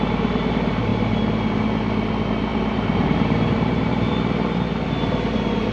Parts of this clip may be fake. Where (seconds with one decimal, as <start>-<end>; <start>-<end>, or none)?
2.5-4.2